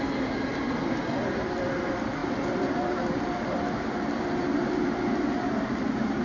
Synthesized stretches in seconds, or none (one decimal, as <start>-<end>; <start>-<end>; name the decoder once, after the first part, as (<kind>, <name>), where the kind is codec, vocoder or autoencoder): 0.0-6.2 (vocoder, BigVGAN v2)